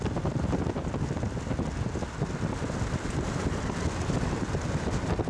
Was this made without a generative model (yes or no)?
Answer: yes